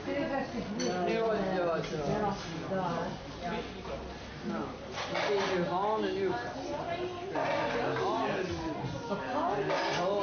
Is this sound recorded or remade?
recorded